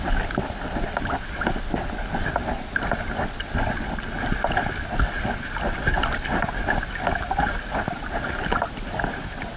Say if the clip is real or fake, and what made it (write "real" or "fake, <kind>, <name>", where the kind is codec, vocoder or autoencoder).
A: real